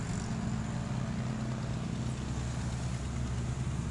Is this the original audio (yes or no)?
yes